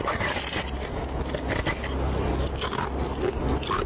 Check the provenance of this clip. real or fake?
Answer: real